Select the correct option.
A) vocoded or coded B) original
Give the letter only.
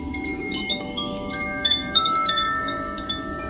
A